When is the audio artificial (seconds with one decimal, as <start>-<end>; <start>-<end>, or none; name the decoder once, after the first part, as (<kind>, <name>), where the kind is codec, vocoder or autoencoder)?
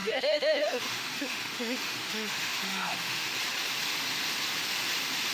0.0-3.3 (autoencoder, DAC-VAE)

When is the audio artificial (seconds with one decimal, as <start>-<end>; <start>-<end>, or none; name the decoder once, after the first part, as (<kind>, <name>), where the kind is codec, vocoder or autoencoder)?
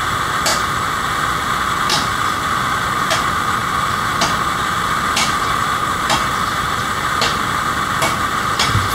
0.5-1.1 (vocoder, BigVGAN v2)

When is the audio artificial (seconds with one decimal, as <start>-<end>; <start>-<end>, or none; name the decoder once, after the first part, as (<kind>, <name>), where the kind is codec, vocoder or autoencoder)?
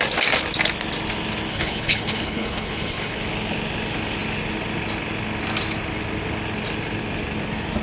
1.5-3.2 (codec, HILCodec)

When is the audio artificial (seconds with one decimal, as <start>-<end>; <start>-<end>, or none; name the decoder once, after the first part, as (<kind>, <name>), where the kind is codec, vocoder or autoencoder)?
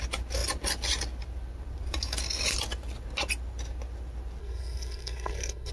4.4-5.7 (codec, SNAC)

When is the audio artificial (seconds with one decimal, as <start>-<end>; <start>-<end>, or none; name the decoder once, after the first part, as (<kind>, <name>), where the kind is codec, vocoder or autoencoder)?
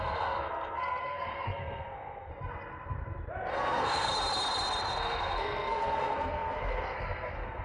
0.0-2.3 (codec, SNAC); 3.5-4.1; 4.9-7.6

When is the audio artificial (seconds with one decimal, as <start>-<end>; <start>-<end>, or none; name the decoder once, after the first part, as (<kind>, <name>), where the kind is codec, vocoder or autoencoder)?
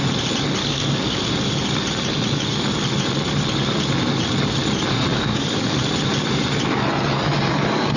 0.6-1.2 (codec, DAC); 5.1-5.8